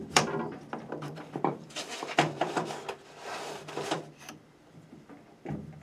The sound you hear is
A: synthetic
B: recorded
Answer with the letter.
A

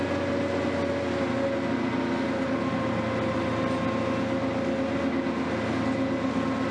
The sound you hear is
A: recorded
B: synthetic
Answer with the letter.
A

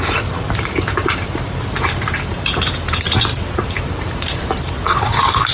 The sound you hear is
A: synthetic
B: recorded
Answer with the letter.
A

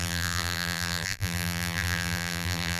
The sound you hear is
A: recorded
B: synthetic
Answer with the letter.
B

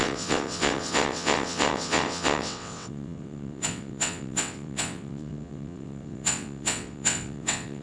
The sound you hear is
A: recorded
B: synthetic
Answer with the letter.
B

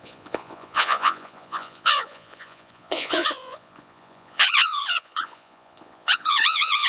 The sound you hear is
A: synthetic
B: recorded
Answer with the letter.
A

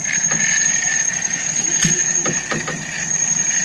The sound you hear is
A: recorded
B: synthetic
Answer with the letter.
A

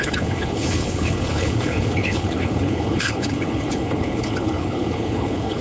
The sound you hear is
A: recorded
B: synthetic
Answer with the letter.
B